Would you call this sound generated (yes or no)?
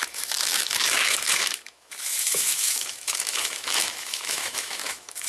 yes